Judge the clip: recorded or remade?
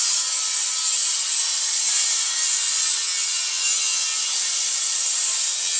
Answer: recorded